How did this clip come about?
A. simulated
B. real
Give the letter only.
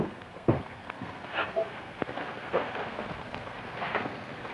A